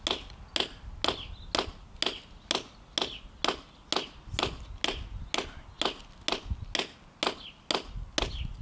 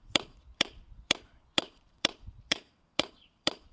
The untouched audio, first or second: first